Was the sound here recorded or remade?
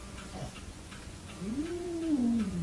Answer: remade